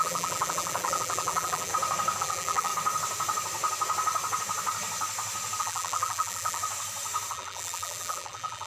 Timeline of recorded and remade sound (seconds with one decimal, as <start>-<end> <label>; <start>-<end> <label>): 0.0-1.7 remade; 1.7-2.2 recorded; 2.2-2.7 remade; 2.7-5.6 recorded; 5.6-6.6 remade; 6.6-7.3 recorded; 7.3-8.7 remade